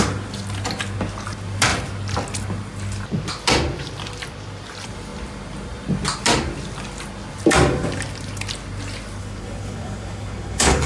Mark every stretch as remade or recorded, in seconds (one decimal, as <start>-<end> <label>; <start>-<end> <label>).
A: 0.0-9.2 recorded; 9.2-10.9 remade